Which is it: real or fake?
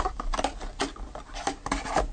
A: real